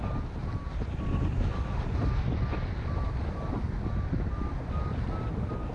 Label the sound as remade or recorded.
recorded